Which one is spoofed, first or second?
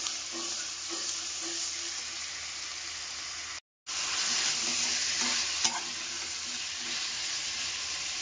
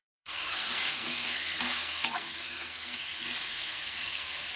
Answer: second